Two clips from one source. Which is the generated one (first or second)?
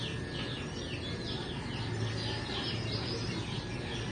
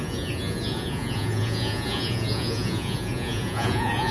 second